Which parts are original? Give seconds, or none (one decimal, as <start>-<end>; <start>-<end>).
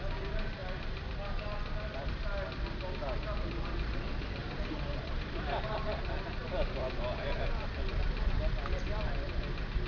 0.0-4.4; 6.0-9.9